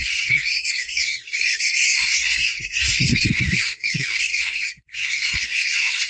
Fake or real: fake